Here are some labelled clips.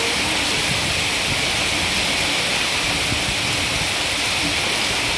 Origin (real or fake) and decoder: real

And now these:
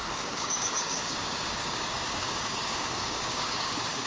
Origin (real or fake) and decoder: fake, codec, DAC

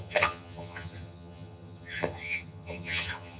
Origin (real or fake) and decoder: fake, vocoder, HiFi-GAN